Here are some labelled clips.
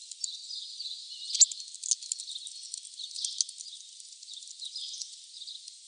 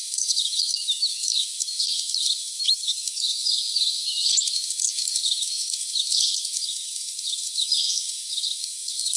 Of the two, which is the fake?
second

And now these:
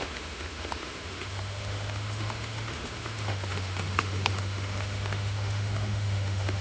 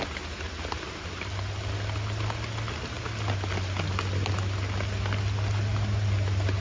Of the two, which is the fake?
first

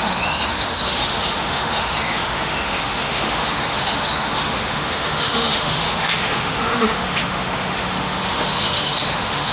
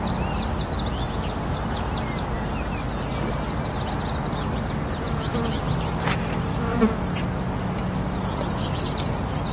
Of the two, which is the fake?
first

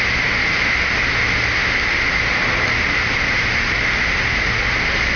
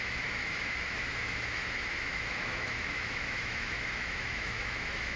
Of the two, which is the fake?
second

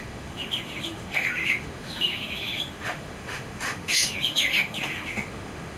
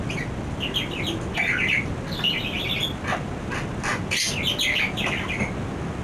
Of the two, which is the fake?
first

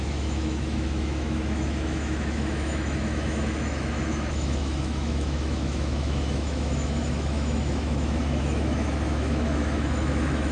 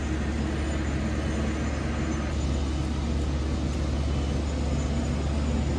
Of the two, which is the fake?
first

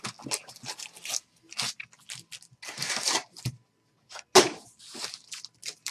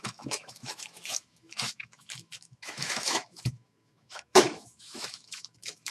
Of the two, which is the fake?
second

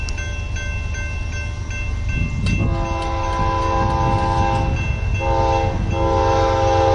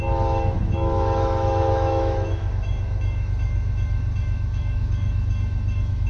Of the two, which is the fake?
second